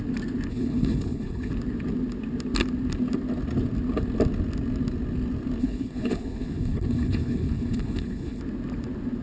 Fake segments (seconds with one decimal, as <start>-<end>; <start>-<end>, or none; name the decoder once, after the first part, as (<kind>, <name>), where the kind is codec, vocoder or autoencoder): 0.5-1.5 (codec, HILCodec); 5.6-8.4